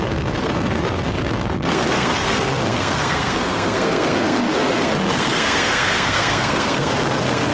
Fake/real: fake